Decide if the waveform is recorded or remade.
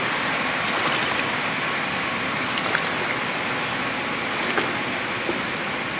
recorded